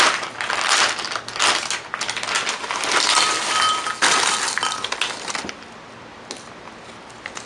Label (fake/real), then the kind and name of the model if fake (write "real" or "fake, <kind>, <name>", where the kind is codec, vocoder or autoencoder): real